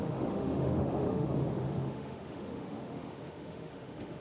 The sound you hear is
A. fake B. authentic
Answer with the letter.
A